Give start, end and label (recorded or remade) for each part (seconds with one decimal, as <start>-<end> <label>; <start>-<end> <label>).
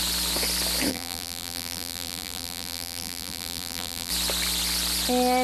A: 0.0-0.9 recorded; 0.9-4.1 remade; 4.1-5.4 recorded